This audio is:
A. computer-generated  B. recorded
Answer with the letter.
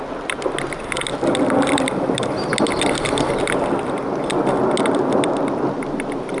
B